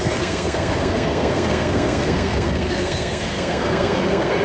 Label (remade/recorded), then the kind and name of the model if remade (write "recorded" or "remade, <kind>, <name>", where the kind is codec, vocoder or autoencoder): remade, codec, SNAC